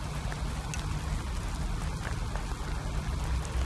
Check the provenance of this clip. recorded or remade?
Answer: recorded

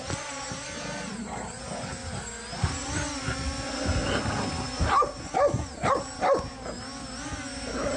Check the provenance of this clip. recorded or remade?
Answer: recorded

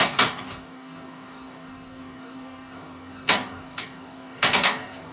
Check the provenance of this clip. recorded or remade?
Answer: remade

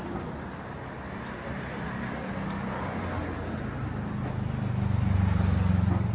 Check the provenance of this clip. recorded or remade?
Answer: recorded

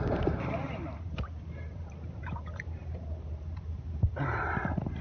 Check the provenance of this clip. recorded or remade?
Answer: remade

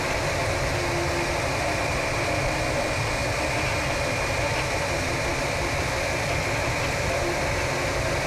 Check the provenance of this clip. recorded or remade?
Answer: recorded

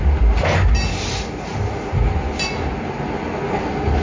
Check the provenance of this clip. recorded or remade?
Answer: recorded